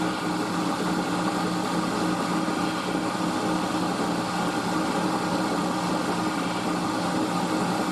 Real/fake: real